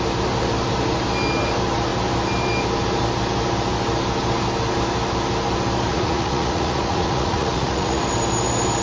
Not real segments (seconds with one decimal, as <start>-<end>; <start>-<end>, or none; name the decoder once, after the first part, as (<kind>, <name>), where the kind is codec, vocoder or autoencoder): 5.9-8.0 (vocoder, Vocos)